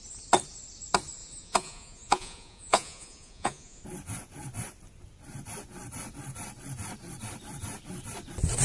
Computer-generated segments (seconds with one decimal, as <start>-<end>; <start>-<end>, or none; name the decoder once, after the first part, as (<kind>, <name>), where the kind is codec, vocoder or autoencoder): 1.2-3.8 (vocoder, Vocos)